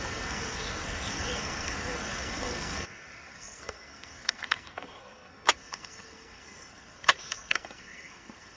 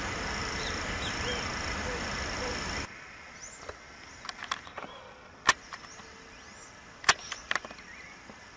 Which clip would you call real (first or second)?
second